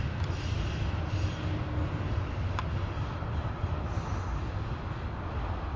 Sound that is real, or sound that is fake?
real